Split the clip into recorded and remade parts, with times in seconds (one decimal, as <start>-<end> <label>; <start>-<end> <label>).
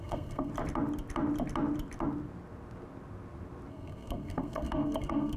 0.0-0.5 remade; 0.5-3.7 recorded; 3.7-5.4 remade